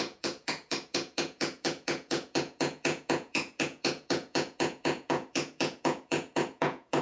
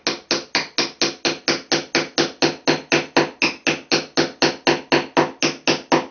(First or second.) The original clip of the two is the second